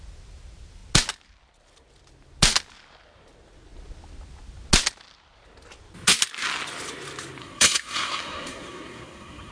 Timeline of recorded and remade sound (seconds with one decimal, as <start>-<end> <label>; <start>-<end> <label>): 0.0-7.4 recorded; 7.4-9.5 remade